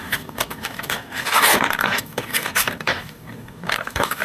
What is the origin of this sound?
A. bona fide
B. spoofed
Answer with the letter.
B